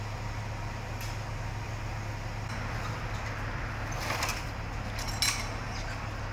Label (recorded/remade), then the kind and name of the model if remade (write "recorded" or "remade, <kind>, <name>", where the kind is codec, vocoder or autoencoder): recorded